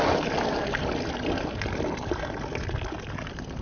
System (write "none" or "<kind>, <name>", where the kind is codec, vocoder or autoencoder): none